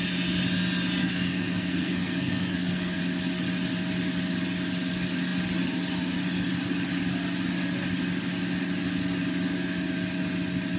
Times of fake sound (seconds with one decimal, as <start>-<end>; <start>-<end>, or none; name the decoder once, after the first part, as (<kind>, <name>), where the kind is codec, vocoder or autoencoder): 1.0-3.0 (codec, SNAC)